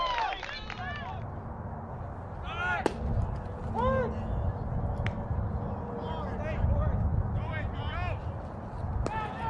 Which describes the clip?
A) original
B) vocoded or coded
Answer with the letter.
A